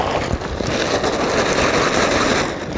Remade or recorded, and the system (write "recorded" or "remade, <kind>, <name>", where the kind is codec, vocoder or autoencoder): recorded